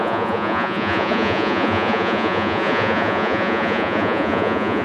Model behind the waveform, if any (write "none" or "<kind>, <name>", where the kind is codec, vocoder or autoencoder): vocoder, Vocos